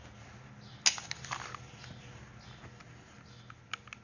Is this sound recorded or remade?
recorded